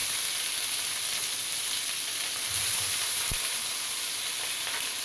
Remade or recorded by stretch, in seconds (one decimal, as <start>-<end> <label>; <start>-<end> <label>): 0.0-5.0 recorded